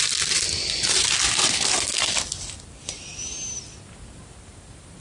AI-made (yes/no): no